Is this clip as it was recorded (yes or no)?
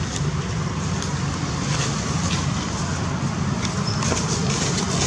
yes